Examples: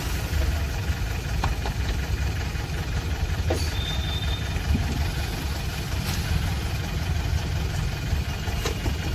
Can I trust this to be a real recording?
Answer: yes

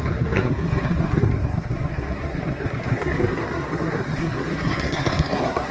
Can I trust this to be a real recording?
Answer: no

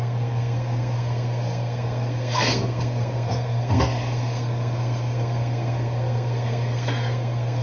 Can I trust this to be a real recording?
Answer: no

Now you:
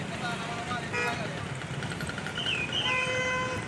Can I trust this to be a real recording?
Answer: yes